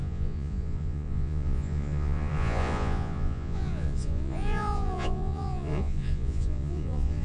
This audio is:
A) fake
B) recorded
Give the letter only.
A